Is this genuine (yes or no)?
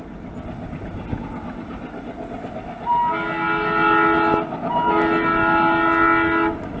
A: yes